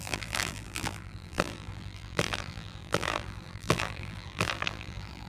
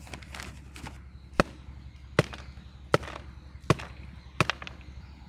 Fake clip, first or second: first